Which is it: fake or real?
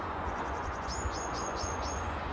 fake